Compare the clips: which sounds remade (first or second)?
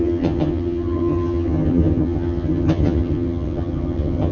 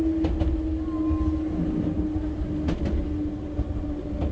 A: first